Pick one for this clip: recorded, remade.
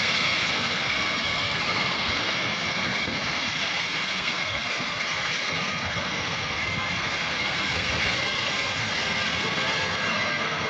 remade